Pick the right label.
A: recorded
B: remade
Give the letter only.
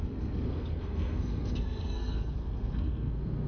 B